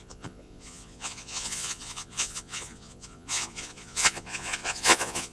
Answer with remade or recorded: remade